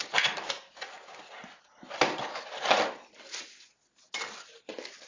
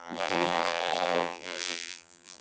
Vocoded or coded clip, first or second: second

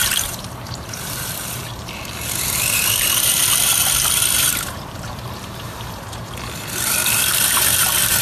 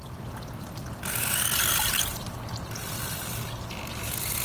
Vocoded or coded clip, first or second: first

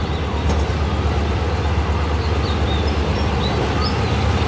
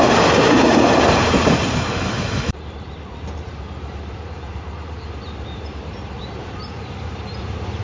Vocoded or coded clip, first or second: second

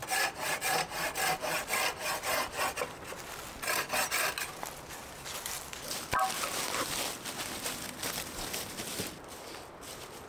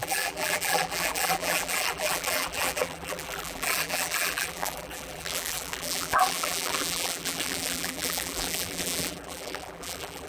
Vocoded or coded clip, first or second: second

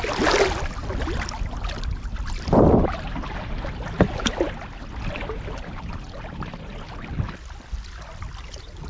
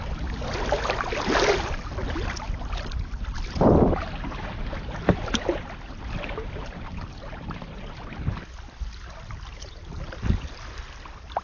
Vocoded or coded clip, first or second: second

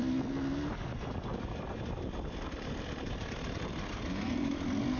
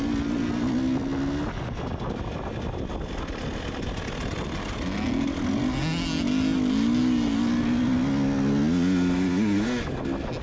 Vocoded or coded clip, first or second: first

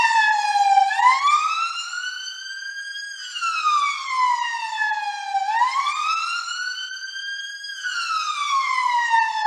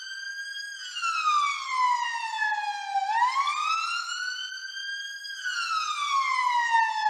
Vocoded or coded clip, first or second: first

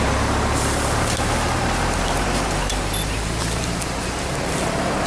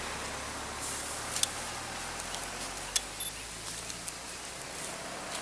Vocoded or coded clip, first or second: first